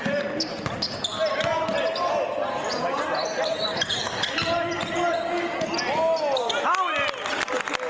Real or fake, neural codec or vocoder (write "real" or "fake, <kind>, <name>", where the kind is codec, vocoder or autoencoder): real